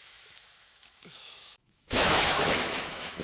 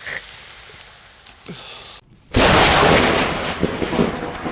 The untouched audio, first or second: second